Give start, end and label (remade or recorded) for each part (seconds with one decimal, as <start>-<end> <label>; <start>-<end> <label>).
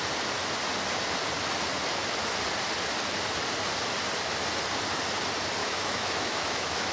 0.0-5.6 recorded; 5.6-6.9 remade